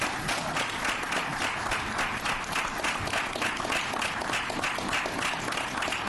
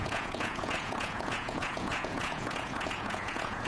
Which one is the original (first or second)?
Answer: first